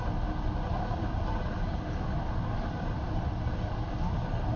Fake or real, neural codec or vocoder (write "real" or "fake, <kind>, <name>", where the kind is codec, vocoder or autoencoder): real